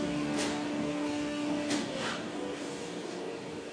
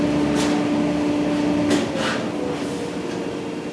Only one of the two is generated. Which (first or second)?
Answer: first